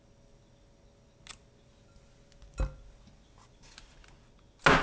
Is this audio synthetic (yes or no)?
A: no